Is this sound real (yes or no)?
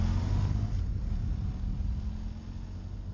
yes